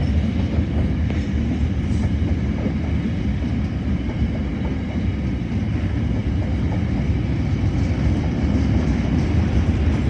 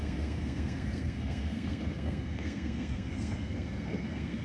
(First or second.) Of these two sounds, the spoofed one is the second